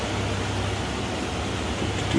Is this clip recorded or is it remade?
recorded